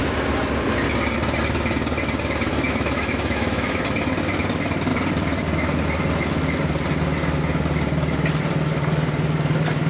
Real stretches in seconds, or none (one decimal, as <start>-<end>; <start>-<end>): 0.0-2.5; 3.8-9.9